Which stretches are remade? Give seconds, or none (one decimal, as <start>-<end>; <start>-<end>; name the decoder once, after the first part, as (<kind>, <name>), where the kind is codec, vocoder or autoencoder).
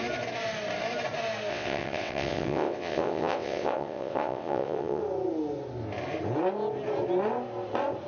1.5-5.0 (vocoder, WaveNeXt)